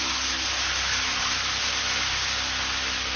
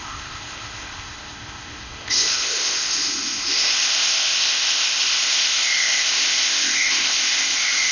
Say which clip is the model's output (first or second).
second